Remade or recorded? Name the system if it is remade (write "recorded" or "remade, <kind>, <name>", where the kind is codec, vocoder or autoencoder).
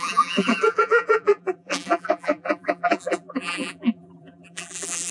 remade, vocoder, BigVGAN v2